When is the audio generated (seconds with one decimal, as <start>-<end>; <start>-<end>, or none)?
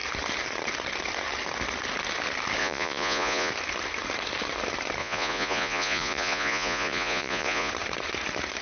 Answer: 2.6-3.5; 5.0-7.7